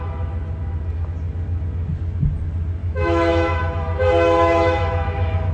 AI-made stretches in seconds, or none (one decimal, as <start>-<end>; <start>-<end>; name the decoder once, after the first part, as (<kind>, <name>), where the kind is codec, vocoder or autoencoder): 2.8-5.5 (autoencoder, DAC-VAE)